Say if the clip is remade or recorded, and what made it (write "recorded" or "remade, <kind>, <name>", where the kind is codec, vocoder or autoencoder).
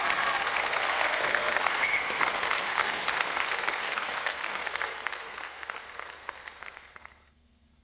remade, codec, SNAC